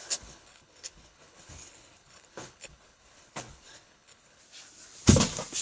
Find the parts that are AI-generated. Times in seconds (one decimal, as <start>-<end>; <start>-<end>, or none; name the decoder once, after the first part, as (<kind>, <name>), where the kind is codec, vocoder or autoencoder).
0.0-4.4 (codec, HILCodec)